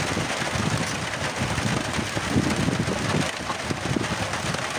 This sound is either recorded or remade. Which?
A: recorded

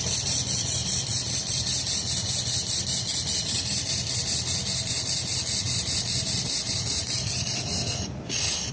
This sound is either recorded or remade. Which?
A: recorded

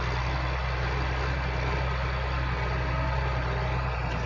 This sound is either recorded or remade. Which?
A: recorded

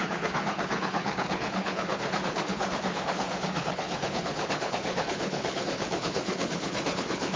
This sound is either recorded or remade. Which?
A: remade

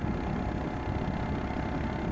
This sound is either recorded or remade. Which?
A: recorded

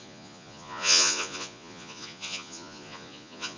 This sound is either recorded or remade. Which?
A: remade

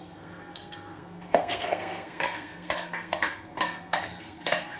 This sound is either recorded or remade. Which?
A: remade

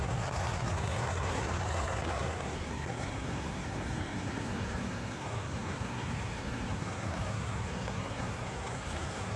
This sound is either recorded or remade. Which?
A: remade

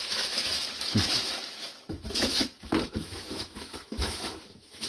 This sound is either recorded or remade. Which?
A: remade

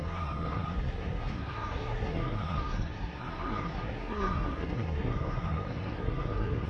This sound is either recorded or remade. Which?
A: remade